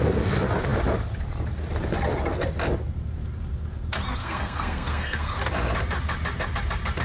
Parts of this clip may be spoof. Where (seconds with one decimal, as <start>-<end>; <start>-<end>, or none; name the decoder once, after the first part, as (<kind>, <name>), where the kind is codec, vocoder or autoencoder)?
4.2-5.4 (codec, SNAC)